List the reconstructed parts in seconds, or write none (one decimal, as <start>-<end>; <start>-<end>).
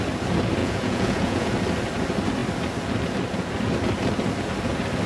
0.6-1.5